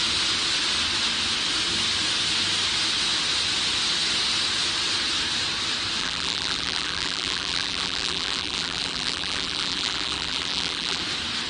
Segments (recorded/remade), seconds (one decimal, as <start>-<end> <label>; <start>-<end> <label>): 0.0-6.0 recorded; 6.0-11.0 remade; 11.0-11.5 recorded